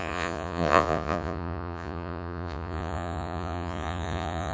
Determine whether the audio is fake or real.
fake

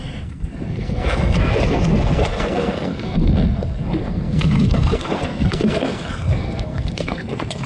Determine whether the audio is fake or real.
fake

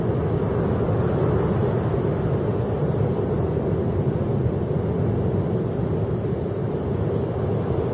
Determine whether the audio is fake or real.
real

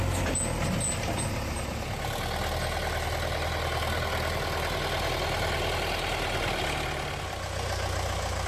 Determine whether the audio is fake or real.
real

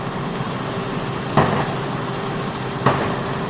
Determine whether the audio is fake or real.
real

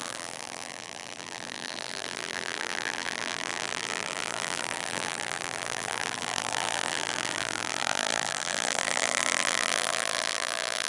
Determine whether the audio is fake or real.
fake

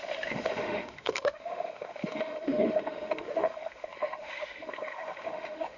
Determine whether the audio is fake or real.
fake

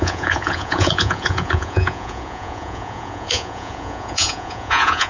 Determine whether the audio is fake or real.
fake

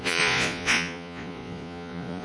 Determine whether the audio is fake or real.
fake